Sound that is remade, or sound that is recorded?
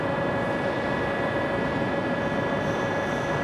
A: recorded